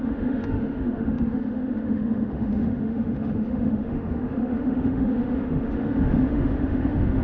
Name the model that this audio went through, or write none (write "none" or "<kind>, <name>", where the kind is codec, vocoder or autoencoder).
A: autoencoder, DAC-VAE